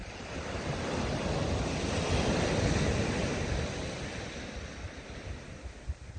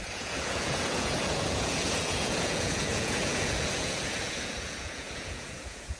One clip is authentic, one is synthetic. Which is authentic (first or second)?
first